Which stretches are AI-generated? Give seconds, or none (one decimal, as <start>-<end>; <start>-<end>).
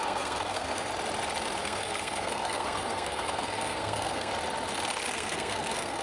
0.0-0.9; 1.6-4.3; 5.1-6.0